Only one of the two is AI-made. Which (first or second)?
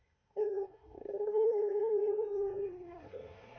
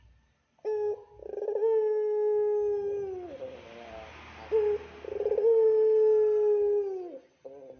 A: first